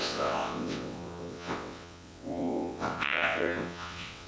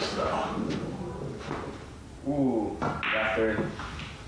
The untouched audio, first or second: second